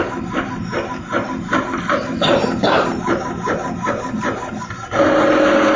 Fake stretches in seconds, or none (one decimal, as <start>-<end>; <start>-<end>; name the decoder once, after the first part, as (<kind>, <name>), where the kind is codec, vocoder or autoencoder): none